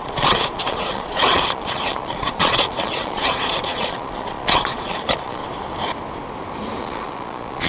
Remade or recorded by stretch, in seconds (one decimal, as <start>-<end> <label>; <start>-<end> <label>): 0.0-5.4 remade; 5.4-6.8 recorded; 6.8-7.7 remade